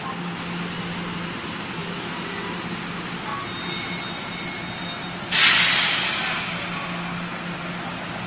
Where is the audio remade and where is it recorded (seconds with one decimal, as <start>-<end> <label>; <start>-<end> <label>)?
0.0-8.3 recorded

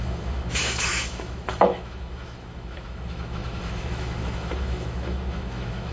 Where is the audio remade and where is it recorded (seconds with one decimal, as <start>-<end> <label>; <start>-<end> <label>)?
0.0-5.9 remade

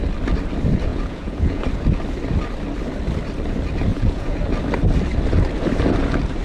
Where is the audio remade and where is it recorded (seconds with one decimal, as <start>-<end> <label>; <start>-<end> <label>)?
0.0-0.9 recorded; 0.9-1.6 remade; 1.6-3.9 recorded; 3.9-4.4 remade; 4.4-6.4 recorded

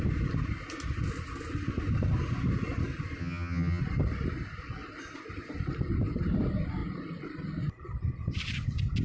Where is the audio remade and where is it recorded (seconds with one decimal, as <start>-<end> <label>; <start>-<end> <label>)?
0.0-3.2 recorded; 3.2-3.8 remade; 3.8-9.0 recorded

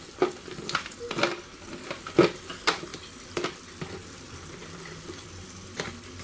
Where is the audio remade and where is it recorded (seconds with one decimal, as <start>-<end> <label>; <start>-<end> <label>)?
0.0-0.4 remade; 0.4-1.7 recorded; 1.7-6.2 remade